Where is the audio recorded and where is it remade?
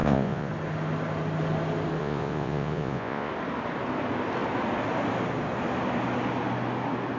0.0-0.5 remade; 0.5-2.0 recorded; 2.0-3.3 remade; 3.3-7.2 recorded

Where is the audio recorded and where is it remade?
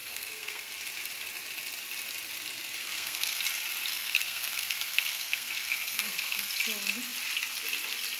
0.0-0.7 remade; 0.7-2.8 recorded; 2.8-3.4 remade; 3.4-3.9 recorded; 3.9-6.5 remade; 6.5-8.2 recorded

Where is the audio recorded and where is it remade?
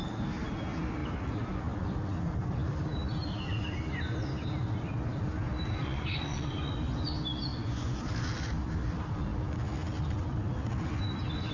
0.0-5.8 recorded; 5.8-6.7 remade; 6.7-7.5 recorded; 7.5-8.0 remade; 8.0-11.5 recorded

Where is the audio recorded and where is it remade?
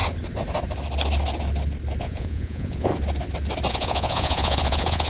0.0-2.0 recorded; 2.0-2.9 remade; 2.9-3.7 recorded; 3.7-5.1 remade